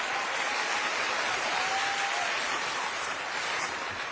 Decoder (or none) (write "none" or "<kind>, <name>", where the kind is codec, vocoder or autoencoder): none